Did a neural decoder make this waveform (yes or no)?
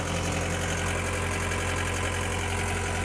no